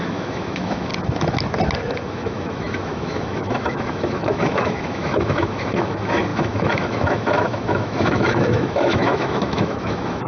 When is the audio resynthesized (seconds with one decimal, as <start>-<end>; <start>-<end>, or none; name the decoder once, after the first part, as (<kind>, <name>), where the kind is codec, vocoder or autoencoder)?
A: 0.0-0.9 (autoencoder, DAC-VAE); 1.9-10.3